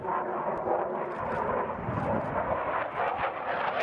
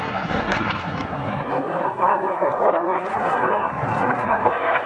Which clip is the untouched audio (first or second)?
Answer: first